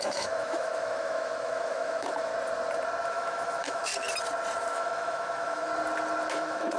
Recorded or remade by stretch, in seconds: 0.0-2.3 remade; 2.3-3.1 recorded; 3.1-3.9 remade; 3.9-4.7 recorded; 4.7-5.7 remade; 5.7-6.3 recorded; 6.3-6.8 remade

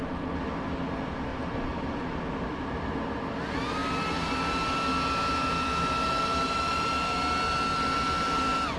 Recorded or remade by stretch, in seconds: 0.0-1.3 recorded; 1.3-2.2 remade; 2.2-8.8 recorded

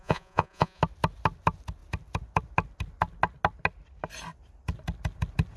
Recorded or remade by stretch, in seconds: 0.0-0.8 remade; 0.8-5.6 recorded